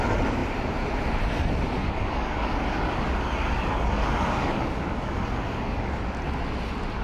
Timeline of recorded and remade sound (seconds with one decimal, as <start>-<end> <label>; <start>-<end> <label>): 0.0-1.8 recorded; 1.8-6.0 remade; 6.0-7.0 recorded